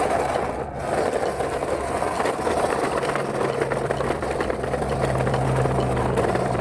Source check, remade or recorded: recorded